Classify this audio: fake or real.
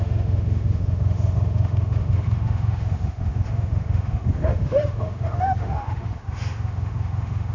fake